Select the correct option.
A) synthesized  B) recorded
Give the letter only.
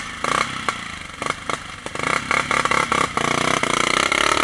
B